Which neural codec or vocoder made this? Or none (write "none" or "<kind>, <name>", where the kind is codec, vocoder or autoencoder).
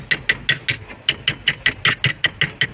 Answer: none